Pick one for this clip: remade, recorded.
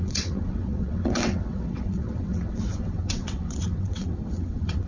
remade